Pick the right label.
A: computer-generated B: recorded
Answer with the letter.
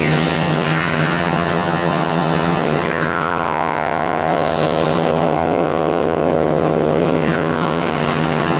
A